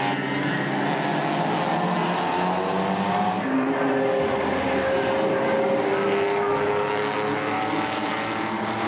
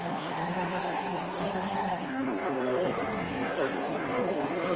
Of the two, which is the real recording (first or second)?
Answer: first